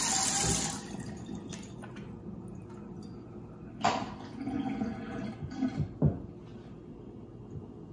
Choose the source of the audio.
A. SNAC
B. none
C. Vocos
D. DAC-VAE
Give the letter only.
B